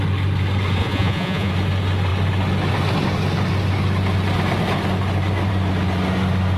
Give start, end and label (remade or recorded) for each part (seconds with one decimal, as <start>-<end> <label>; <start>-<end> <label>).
0.0-0.8 recorded; 0.8-1.5 remade; 1.5-6.6 recorded